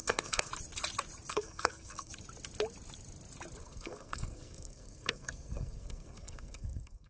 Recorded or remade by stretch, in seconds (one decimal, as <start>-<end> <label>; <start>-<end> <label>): 0.0-0.5 remade; 0.5-1.3 recorded; 1.3-2.1 remade; 2.1-3.6 recorded; 3.6-7.1 remade